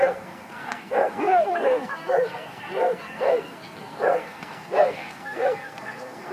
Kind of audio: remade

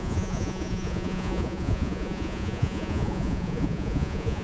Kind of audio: remade